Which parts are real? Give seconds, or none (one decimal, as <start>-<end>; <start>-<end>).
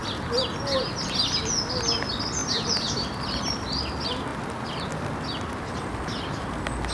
0.0-6.9